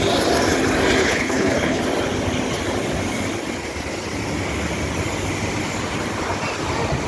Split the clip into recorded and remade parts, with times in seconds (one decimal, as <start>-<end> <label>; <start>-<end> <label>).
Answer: 0.0-1.0 recorded; 1.0-1.8 remade; 1.8-7.1 recorded